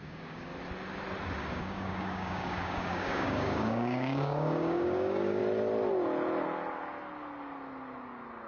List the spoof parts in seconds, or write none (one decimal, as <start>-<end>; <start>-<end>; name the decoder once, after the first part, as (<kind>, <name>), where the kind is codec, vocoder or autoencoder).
0.0-0.5 (codec, DAC); 1.5-5.4